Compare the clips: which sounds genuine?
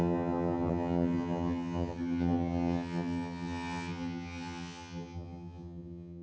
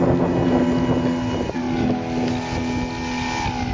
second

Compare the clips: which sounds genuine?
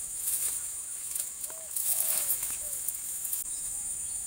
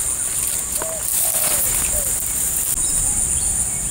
second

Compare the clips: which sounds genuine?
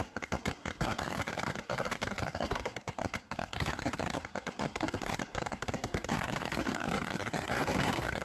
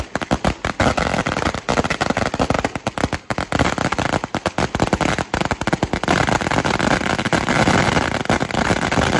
second